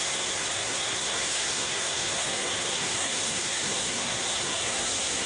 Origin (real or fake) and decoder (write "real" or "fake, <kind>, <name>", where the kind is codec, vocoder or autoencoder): fake, codec, SNAC